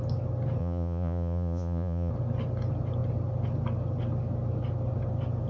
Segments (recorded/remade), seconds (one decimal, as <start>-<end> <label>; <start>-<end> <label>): 0.0-0.6 recorded; 0.6-2.1 remade; 2.1-5.5 recorded

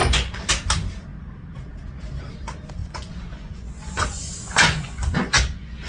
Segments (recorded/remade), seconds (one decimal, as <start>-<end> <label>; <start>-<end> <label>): 0.0-0.5 remade; 0.5-2.8 recorded; 2.8-5.9 remade